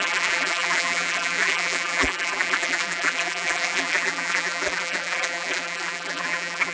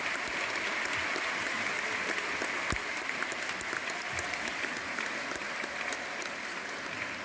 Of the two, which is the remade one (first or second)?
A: first